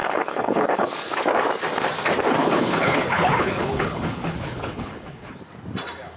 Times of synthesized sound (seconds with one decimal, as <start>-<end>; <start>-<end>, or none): 0.0-1.2; 2.4-5.4